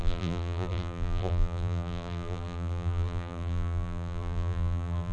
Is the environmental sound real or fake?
fake